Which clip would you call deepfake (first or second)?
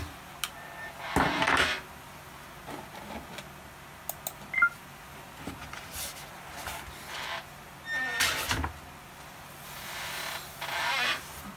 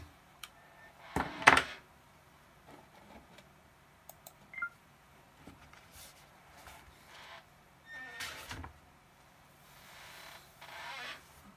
second